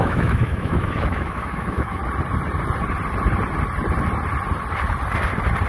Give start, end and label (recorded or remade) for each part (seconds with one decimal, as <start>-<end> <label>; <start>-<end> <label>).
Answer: 0.0-2.0 remade; 2.0-5.7 recorded

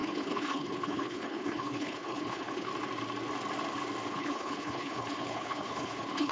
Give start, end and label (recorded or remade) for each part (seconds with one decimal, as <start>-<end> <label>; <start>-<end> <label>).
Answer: 0.0-2.7 remade; 2.7-4.1 recorded; 4.1-6.3 remade

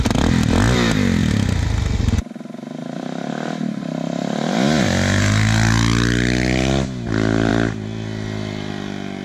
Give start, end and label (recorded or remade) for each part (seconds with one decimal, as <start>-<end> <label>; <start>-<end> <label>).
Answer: 0.0-9.2 recorded

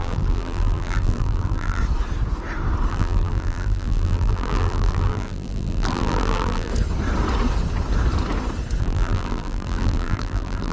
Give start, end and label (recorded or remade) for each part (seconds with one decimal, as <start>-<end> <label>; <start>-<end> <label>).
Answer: 0.0-1.8 remade; 1.8-2.9 recorded; 2.9-6.7 remade; 6.7-8.8 recorded; 8.8-10.7 remade